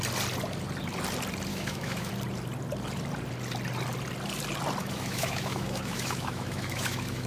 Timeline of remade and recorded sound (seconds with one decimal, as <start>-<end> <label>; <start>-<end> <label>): 0.0-1.5 recorded; 1.5-2.1 remade; 2.1-4.8 recorded; 4.8-7.3 remade